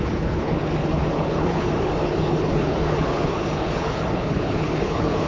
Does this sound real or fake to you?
fake